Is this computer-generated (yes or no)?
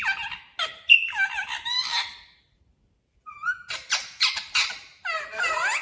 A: no